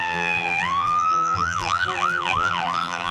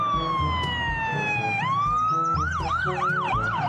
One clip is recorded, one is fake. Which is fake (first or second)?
first